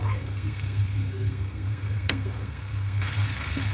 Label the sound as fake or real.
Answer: fake